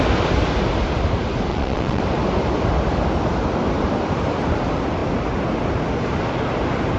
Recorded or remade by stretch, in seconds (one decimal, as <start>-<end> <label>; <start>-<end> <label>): 0.0-1.5 recorded; 1.5-2.0 remade; 2.0-7.0 recorded